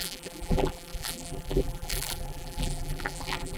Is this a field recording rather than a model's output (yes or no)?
no